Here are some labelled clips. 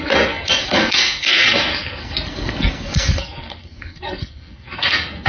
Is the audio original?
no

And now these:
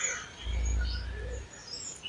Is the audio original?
yes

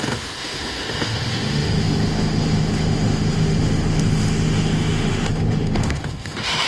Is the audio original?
no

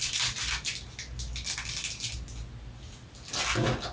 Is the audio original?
yes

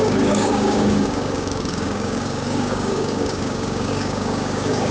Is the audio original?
no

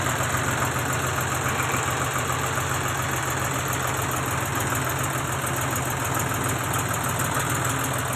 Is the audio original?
yes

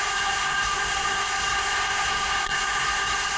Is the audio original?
no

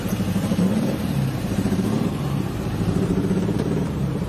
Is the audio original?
no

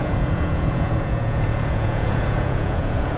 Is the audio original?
no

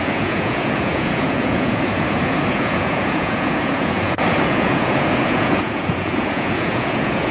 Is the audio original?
no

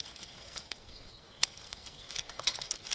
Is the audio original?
no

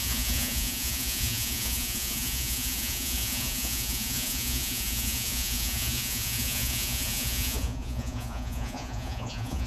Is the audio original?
no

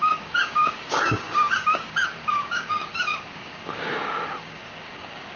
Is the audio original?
no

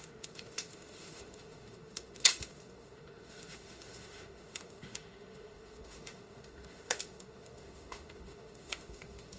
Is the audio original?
no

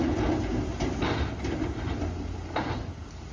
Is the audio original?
yes